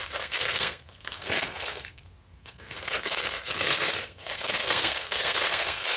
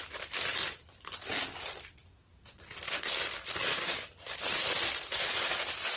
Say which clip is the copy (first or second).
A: first